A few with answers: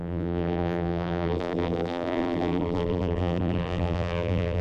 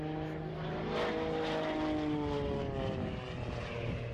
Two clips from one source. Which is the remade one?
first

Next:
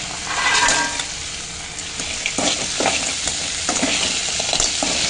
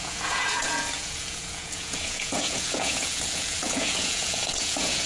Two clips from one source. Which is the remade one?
second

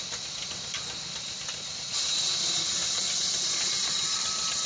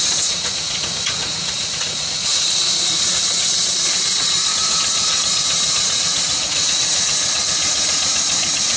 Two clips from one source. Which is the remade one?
second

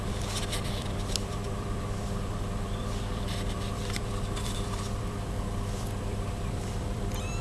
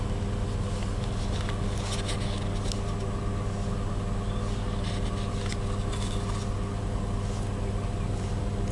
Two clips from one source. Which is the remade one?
first